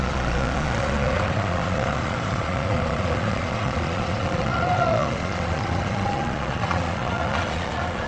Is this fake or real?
fake